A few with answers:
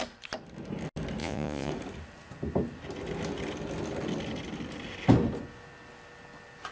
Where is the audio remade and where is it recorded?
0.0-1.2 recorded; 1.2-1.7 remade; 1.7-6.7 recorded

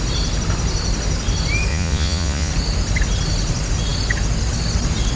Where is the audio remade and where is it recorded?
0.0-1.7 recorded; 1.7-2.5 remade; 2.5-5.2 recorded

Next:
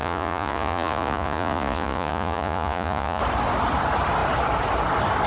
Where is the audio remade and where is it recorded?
0.0-3.2 remade; 3.2-5.3 recorded